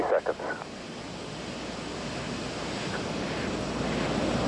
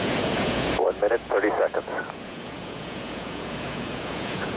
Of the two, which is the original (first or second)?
first